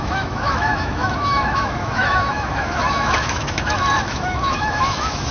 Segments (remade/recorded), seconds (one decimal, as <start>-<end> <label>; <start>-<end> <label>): 0.0-5.3 remade